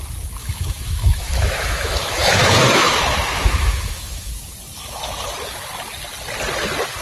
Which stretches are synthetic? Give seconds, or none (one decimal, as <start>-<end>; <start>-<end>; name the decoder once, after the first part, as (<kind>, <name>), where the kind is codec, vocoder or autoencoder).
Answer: 0.4-4.3 (autoencoder, DAC-VAE)